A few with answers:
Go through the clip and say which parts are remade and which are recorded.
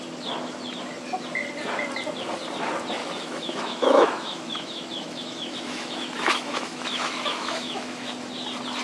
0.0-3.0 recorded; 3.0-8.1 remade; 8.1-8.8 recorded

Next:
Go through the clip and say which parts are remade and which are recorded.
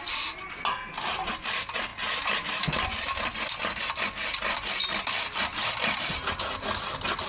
0.0-7.3 recorded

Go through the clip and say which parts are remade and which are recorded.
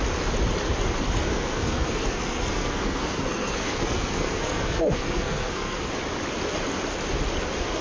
0.0-1.3 recorded; 1.3-5.9 remade; 5.9-7.8 recorded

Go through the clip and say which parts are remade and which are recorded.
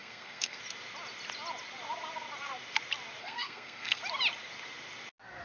0.0-0.6 remade; 0.6-3.2 recorded; 3.2-4.0 remade; 4.0-5.4 recorded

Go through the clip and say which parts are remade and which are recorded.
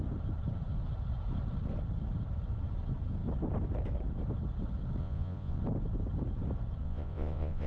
0.0-5.0 recorded; 5.0-5.6 remade; 5.6-6.8 recorded; 6.8-7.7 remade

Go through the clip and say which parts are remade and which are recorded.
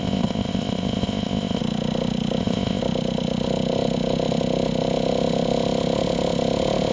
0.0-1.6 remade; 1.6-2.4 recorded; 2.4-2.8 remade; 2.8-6.9 recorded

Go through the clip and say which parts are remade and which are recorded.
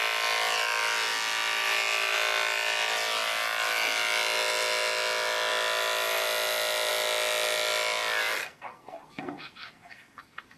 0.0-8.4 recorded; 8.4-10.6 remade